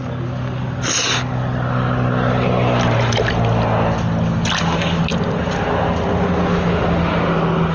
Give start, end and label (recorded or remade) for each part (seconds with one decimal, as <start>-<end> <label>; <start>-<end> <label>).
0.0-4.6 recorded; 4.6-5.0 remade; 5.0-7.7 recorded